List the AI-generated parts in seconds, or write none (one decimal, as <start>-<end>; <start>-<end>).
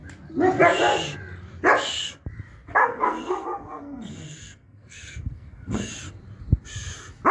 2.8-5.9